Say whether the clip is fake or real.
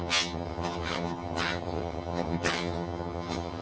fake